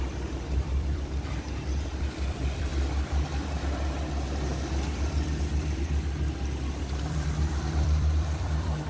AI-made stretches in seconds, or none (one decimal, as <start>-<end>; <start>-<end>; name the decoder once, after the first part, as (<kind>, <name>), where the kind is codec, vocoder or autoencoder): 0.0-2.7 (vocoder, BigVGAN v2); 6.8-8.9